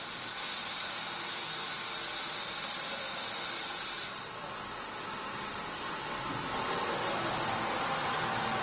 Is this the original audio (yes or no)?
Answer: yes